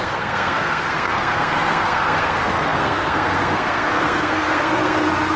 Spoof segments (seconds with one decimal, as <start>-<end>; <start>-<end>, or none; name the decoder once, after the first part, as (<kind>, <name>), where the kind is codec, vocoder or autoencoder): 0.0-5.4 (codec, SNAC)